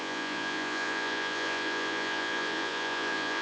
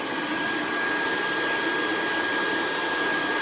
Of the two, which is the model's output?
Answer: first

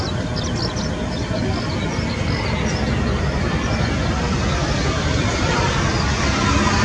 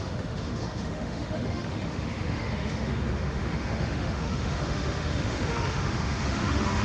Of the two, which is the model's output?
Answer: second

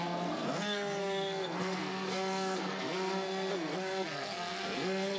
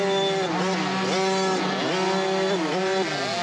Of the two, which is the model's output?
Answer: first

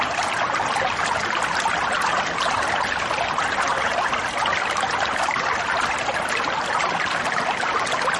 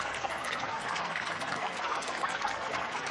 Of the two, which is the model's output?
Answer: second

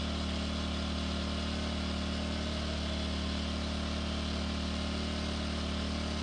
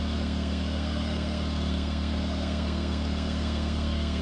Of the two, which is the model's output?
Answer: second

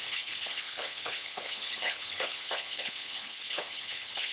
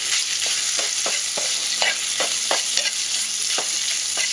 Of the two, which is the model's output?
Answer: first